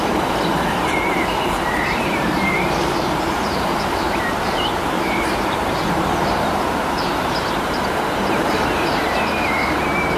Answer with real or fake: fake